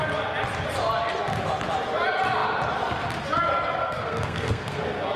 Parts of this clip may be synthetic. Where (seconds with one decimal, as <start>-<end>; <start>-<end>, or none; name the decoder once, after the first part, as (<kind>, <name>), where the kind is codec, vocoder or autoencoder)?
3.8-4.8 (codec, SNAC)